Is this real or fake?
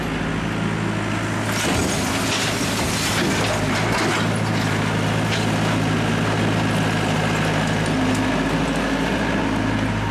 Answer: real